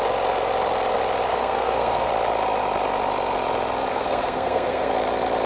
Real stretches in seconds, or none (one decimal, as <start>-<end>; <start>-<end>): 0.0-1.3; 2.1-3.9; 4.9-5.5